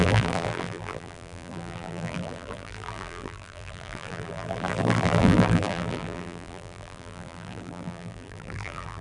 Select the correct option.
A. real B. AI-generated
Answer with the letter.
B